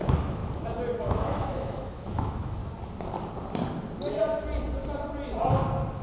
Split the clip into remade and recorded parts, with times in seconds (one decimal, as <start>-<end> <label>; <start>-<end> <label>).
0.0-0.4 remade; 0.4-1.0 recorded; 1.0-2.6 remade; 2.6-6.0 recorded